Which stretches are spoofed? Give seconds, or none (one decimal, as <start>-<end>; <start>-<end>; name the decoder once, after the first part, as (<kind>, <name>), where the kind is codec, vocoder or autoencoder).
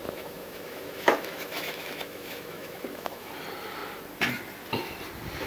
0.0-3.3 (autoencoder, DAC-VAE)